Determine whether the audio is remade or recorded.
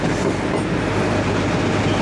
recorded